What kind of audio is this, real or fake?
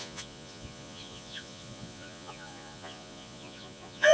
fake